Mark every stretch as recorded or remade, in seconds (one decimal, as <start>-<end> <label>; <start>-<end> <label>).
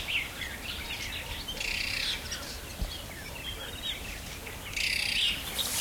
0.0-2.7 recorded; 2.7-3.7 remade; 3.7-5.8 recorded